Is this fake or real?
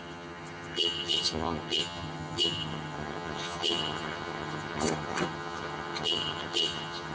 fake